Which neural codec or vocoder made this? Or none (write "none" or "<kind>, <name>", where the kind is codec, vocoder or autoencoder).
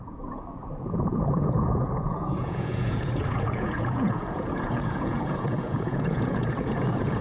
vocoder, Vocos